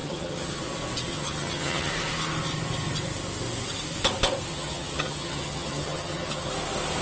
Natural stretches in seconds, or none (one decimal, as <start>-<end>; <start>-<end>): 0.6-1.1; 1.9-4.5; 6.5-7.0